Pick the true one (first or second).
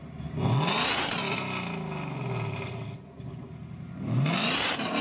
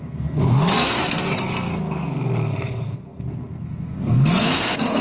first